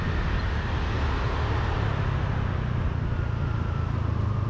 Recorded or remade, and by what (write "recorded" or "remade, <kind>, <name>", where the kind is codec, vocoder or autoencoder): recorded